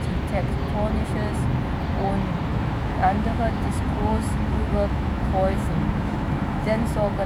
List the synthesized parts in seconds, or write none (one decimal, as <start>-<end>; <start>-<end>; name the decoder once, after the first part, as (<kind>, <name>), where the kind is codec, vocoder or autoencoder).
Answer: 2.5-7.3 (autoencoder, DAC-VAE)